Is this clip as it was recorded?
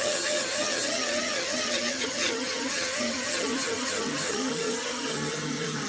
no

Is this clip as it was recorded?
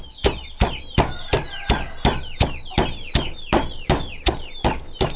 yes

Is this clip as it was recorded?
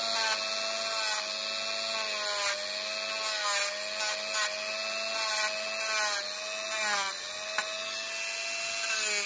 yes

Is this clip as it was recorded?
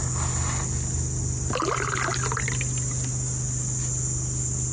yes